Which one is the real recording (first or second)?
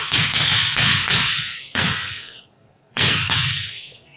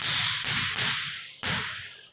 second